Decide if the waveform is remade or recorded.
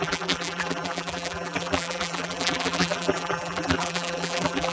remade